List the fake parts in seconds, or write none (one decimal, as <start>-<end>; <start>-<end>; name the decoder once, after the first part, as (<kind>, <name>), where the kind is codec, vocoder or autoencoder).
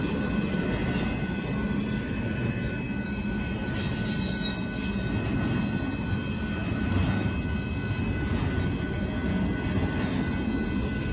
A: none